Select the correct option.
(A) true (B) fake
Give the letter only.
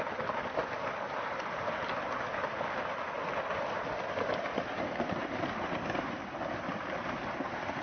A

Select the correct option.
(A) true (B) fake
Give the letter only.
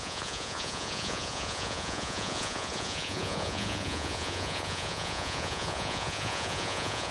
B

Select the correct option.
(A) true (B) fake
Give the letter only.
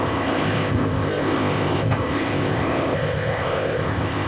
B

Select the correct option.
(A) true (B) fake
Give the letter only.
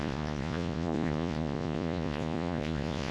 B